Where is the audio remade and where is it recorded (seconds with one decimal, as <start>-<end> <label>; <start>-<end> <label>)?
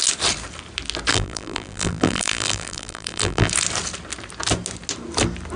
0.0-1.1 recorded; 1.1-3.5 remade; 3.5-5.6 recorded